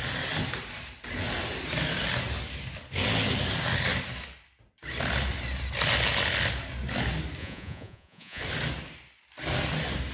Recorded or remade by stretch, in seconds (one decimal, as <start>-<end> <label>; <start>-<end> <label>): 0.0-7.4 recorded; 7.4-8.4 remade; 8.4-10.1 recorded